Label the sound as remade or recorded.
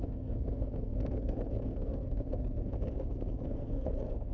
remade